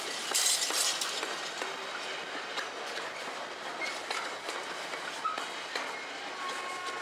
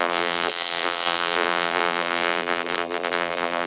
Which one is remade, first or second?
second